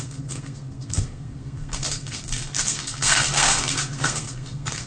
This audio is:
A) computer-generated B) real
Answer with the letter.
A